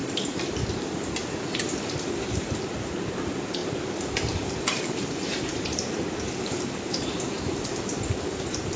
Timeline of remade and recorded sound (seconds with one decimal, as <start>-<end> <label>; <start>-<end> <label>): 0.0-8.8 remade